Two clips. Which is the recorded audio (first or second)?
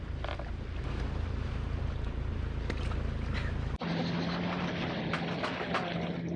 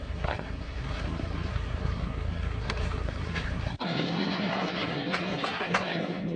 first